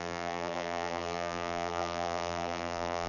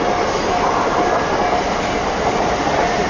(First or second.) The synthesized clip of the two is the first